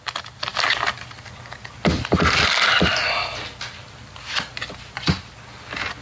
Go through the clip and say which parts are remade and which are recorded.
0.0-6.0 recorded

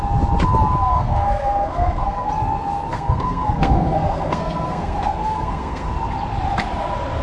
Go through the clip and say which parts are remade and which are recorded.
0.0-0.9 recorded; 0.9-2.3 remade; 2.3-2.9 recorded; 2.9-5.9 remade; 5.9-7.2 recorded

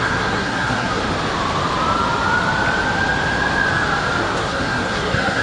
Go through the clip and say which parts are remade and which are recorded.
0.0-1.0 remade; 1.0-4.2 recorded; 4.2-5.4 remade